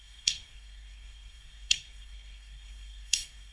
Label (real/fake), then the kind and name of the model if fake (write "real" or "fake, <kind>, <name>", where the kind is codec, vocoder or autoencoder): fake, codec, SNAC